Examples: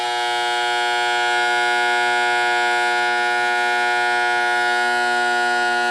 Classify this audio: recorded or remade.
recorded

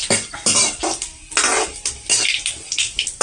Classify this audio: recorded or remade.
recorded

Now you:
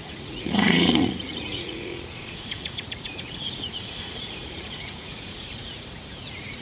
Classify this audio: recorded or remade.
remade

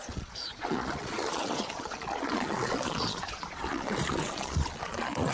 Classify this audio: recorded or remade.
remade